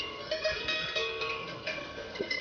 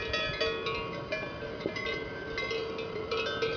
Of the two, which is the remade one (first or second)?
first